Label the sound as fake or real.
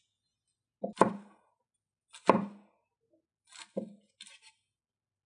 real